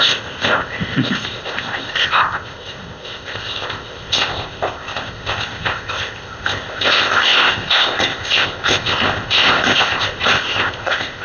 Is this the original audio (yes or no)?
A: no